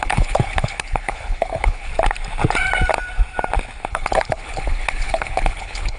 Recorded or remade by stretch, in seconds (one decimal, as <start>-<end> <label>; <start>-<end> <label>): 0.0-1.9 remade; 1.9-3.9 recorded; 3.9-6.0 remade